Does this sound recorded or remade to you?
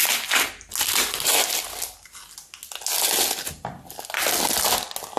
recorded